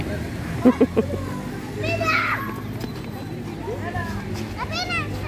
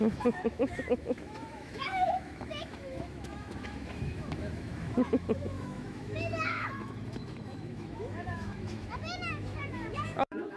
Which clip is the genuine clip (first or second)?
first